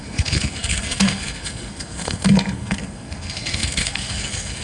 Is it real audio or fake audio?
fake